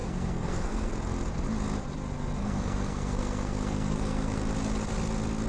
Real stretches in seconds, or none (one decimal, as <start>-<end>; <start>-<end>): 0.9-2.4; 4.4-5.5